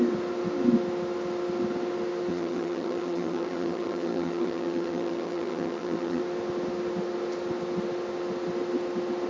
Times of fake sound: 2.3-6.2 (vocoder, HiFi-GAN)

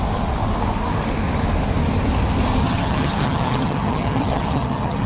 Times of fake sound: 2.6-5.1 (vocoder, HiFi-GAN)